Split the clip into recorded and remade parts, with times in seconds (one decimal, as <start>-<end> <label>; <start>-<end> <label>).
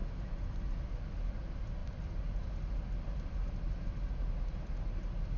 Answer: 0.0-5.4 recorded